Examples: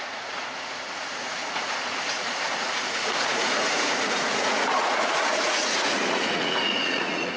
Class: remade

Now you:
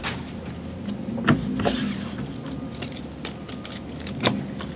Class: recorded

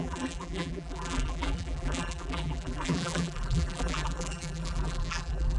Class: remade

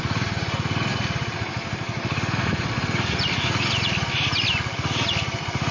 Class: recorded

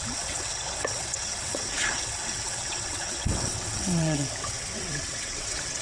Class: remade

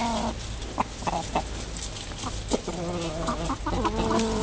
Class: recorded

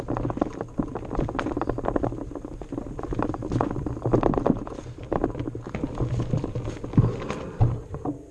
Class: recorded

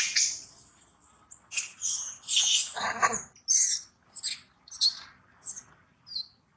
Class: recorded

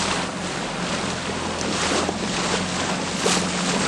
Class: recorded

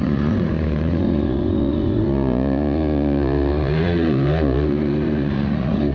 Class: remade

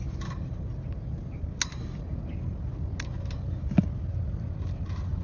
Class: recorded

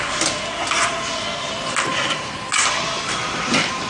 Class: recorded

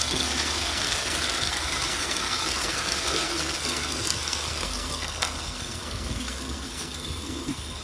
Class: remade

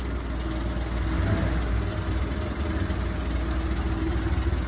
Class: recorded